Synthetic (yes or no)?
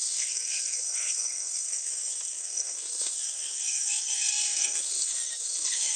yes